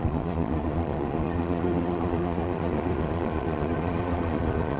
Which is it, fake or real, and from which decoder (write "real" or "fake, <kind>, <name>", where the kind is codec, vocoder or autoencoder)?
fake, vocoder, Vocos